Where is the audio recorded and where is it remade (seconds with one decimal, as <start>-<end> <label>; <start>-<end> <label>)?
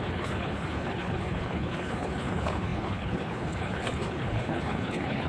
0.0-5.3 remade